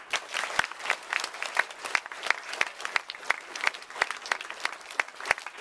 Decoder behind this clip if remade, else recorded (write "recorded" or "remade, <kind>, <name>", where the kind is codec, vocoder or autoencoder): recorded